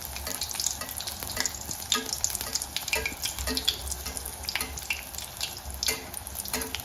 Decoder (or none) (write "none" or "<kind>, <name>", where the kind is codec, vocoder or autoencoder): none